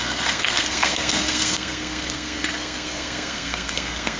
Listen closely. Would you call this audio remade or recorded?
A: remade